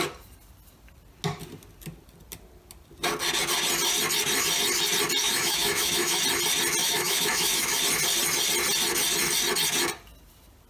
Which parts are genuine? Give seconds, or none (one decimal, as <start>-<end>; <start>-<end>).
0.0-5.2; 6.2-6.8; 7.8-10.7